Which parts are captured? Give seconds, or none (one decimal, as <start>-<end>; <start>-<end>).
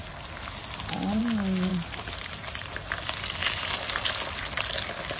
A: 0.0-1.7; 2.9-3.4; 4.2-5.2